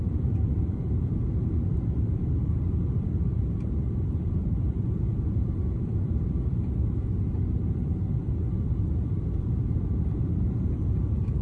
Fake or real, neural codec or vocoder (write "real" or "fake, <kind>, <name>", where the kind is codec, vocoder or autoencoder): fake, vocoder, BigVGAN v2